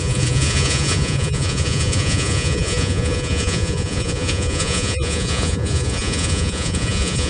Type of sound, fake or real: fake